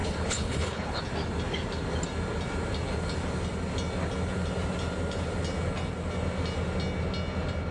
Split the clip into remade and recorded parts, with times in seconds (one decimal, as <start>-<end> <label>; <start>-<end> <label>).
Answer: 0.0-1.0 remade; 1.0-7.7 recorded